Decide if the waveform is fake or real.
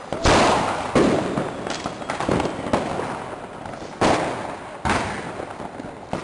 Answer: real